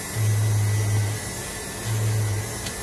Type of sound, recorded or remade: recorded